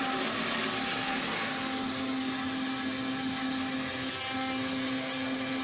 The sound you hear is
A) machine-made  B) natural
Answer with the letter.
B